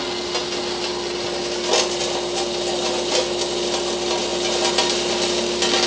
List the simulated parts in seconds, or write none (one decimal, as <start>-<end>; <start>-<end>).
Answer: none